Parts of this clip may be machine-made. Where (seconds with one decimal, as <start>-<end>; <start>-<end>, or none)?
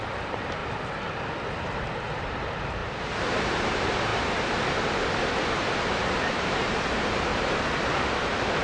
0.0-0.6; 2.2-4.1; 5.5-7.3